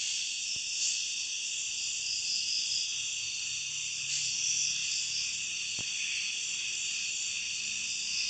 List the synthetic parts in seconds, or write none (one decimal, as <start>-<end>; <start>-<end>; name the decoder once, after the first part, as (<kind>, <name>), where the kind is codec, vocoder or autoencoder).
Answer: 0.0-2.9 (vocoder, BigVGAN v2); 3.6-4.8; 5.8-8.3